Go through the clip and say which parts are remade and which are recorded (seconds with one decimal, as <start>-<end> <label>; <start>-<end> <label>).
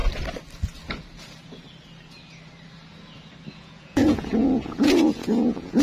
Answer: 0.0-3.5 recorded; 3.5-5.8 remade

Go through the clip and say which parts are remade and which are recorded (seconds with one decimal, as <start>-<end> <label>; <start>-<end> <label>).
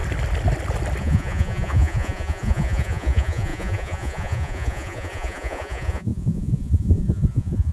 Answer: 0.0-1.0 recorded; 1.0-7.7 remade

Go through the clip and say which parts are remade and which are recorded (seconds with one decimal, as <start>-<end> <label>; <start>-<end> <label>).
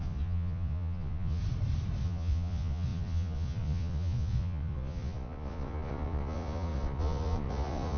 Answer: 0.0-1.4 remade; 1.4-2.0 recorded; 2.0-8.0 remade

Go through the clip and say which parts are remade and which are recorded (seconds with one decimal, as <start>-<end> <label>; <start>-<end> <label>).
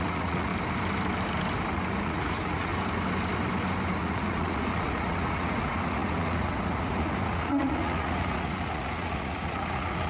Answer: 0.0-0.5 remade; 0.5-1.7 recorded; 1.7-2.7 remade; 2.7-4.0 recorded; 4.0-10.1 remade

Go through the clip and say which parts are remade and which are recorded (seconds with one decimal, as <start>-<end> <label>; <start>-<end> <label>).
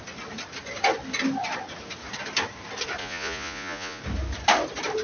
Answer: 0.0-3.0 recorded; 3.0-4.0 remade; 4.0-5.0 recorded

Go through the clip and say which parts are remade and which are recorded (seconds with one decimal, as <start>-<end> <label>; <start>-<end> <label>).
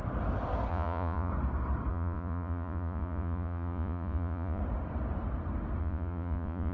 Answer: 0.0-0.7 recorded; 0.7-1.3 remade; 1.3-1.9 recorded; 1.9-4.6 remade; 4.6-5.8 recorded; 5.8-6.7 remade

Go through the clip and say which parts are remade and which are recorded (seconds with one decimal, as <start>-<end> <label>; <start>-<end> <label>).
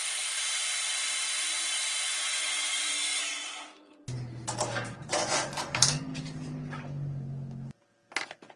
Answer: 0.0-2.1 recorded; 2.1-4.0 remade; 4.0-5.0 recorded; 5.0-5.6 remade; 5.6-8.6 recorded